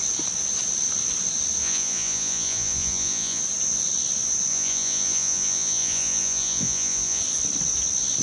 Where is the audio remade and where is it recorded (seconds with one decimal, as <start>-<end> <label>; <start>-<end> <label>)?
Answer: 0.0-1.6 recorded; 1.6-3.4 remade; 3.4-4.5 recorded; 4.5-7.2 remade; 7.2-8.2 recorded